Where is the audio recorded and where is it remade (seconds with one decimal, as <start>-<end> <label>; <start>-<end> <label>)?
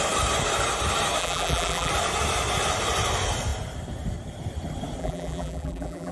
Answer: 0.0-1.2 recorded; 1.2-1.9 remade; 1.9-5.0 recorded; 5.0-6.1 remade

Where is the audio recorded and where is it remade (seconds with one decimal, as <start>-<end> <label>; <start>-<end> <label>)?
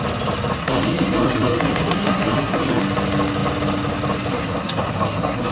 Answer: 0.0-0.6 recorded; 0.6-2.8 remade; 2.8-4.3 recorded; 4.3-5.5 remade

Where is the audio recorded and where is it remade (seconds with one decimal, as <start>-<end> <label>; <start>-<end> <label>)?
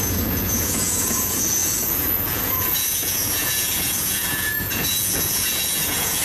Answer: 0.0-6.2 remade